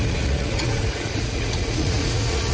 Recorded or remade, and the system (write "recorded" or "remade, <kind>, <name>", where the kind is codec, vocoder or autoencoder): remade, vocoder, Vocos